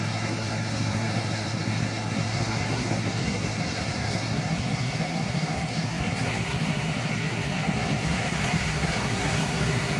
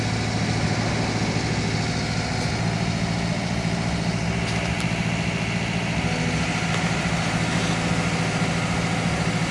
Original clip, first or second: second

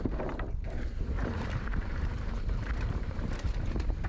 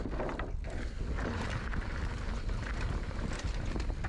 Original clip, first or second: second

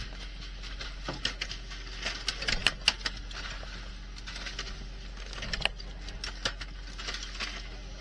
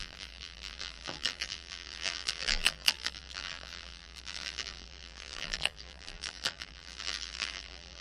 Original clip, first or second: first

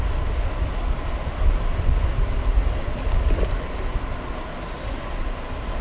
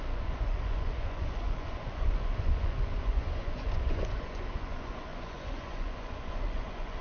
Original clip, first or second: first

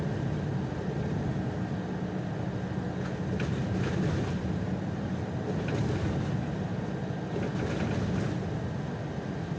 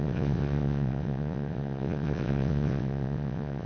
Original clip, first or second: first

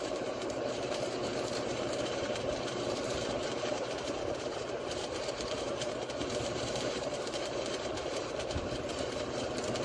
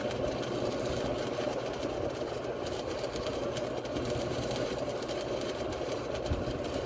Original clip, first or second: second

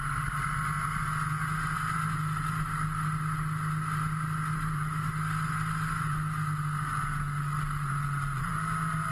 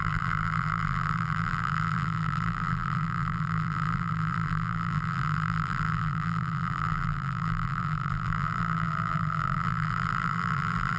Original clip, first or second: first